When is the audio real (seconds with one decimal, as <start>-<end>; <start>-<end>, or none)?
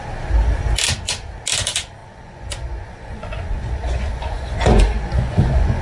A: 0.0-2.0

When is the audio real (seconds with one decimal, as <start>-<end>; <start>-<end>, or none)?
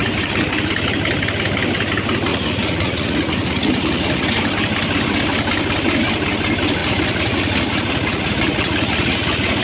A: 0.0-2.3; 4.4-6.8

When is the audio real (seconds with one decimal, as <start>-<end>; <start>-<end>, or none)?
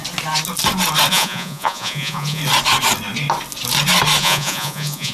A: 0.0-1.1; 2.4-4.2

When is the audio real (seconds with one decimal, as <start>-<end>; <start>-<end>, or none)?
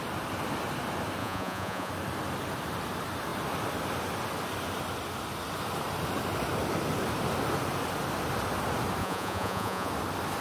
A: 0.0-1.2; 1.9-9.0; 9.9-10.4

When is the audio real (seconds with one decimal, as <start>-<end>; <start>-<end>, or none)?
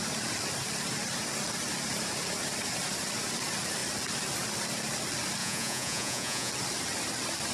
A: 0.0-5.4; 6.5-7.5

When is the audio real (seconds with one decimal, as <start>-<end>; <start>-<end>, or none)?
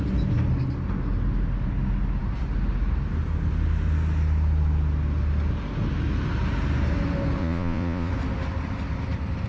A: 0.0-7.4; 8.1-9.5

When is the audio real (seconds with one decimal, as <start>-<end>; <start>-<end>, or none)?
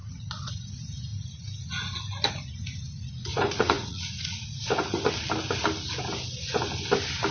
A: 0.5-3.3; 5.1-7.3